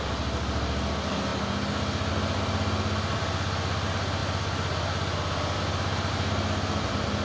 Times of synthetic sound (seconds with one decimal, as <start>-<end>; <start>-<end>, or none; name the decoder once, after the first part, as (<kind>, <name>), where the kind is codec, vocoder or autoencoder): none